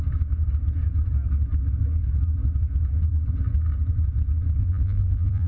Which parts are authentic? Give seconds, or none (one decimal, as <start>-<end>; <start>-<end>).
0.0-4.6

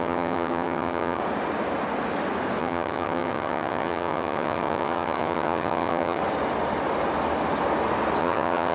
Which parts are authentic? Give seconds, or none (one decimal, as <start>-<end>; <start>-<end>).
1.2-2.6; 6.2-8.2